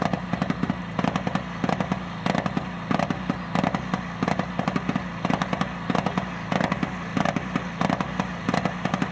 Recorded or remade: recorded